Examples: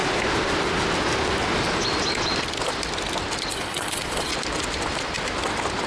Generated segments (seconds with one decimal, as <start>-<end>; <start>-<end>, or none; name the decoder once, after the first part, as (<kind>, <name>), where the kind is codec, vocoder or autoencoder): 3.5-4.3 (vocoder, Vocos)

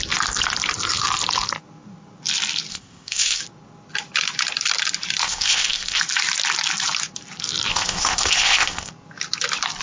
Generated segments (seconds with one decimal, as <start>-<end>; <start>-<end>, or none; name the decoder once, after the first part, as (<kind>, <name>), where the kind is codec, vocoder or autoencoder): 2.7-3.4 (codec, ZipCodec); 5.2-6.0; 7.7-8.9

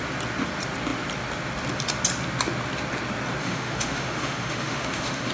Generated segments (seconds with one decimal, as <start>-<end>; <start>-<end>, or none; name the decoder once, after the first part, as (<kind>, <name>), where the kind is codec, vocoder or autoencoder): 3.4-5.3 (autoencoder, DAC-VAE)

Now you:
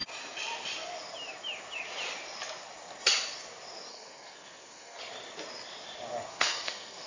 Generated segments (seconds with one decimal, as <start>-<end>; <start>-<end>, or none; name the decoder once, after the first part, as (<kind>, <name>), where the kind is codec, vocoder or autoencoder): 3.9-5.0 (codec, SNAC); 6.3-7.1